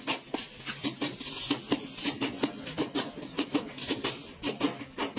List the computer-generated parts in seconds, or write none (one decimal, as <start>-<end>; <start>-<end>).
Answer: none